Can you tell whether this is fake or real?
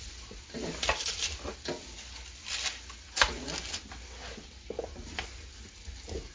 real